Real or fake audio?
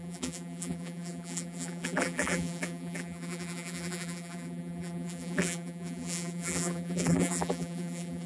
fake